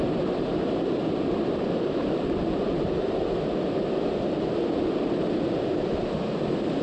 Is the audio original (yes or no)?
no